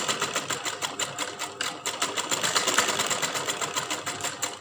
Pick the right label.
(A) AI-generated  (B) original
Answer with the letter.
B